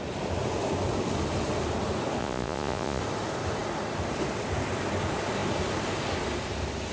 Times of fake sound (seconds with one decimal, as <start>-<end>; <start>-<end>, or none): 2.2-3.0